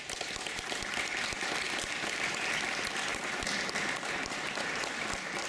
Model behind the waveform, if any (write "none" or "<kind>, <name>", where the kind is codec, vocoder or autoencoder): none